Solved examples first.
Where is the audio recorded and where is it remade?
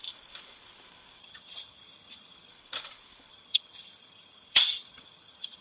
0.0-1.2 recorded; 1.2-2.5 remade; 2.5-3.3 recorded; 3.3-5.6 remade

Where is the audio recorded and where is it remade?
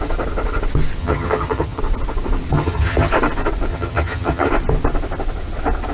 0.0-1.0 recorded; 1.0-1.8 remade; 1.8-2.5 recorded; 2.5-3.1 remade; 3.1-3.7 recorded; 3.7-4.5 remade; 4.5-5.9 recorded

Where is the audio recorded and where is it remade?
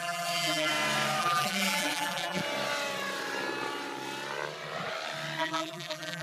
0.0-0.7 remade; 0.7-1.2 recorded; 1.2-2.4 remade; 2.4-5.4 recorded; 5.4-6.2 remade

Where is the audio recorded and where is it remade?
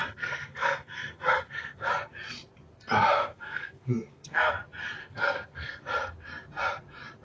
0.0-1.9 remade; 1.9-3.2 recorded; 3.2-4.5 remade; 4.5-5.0 recorded; 5.0-5.8 remade; 5.8-7.2 recorded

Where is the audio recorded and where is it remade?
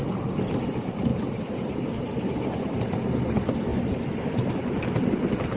0.0-5.6 recorded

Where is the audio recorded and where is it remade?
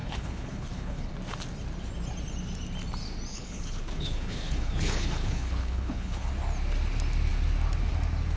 0.0-1.1 remade; 1.1-3.3 recorded; 3.3-6.3 remade; 6.3-8.4 recorded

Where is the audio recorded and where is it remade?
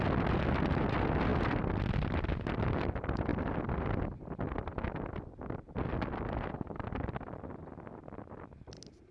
0.0-9.1 recorded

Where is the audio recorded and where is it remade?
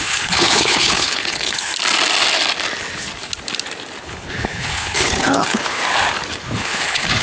0.0-1.7 remade; 1.7-4.0 recorded; 4.0-5.8 remade; 5.8-6.4 recorded; 6.4-7.2 remade